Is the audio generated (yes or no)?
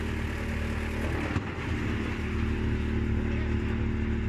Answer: no